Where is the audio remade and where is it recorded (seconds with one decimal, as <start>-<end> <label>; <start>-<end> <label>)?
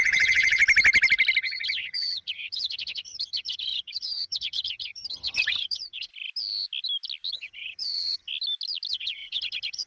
0.0-0.6 remade; 0.6-1.4 recorded; 1.4-6.1 remade; 6.1-7.3 recorded; 7.3-8.3 remade; 8.3-8.9 recorded; 8.9-9.9 remade